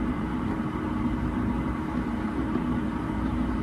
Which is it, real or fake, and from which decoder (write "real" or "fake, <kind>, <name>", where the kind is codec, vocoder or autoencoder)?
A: fake, vocoder, BigVGAN v2